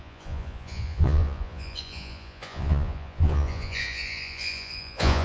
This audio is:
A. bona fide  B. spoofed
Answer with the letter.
B